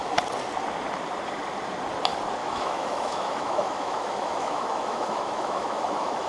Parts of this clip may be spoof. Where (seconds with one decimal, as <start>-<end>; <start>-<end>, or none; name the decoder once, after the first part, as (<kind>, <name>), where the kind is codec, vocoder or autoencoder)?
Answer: 2.4-6.3 (autoencoder, DAC-VAE)